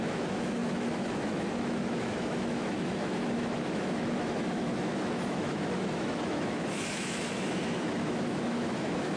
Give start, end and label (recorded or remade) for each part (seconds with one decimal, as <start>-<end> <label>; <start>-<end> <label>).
0.0-9.2 remade